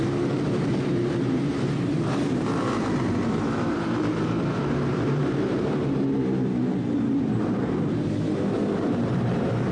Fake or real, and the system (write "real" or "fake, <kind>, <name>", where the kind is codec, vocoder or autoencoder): fake, vocoder, BigVGAN v2